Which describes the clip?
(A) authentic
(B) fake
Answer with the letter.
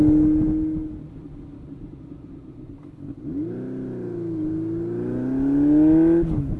A